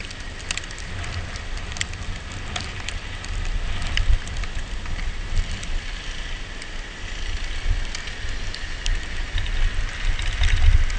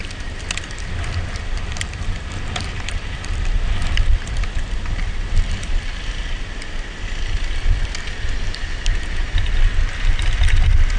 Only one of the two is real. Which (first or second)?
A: first